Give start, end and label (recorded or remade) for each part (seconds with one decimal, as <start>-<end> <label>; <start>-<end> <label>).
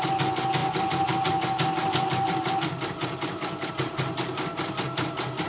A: 0.0-5.5 recorded